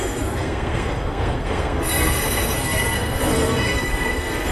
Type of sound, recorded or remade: remade